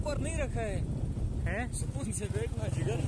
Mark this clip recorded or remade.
recorded